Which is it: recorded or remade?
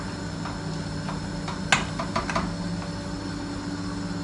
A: recorded